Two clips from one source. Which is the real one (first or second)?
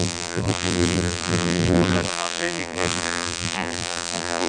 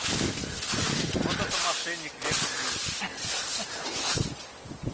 second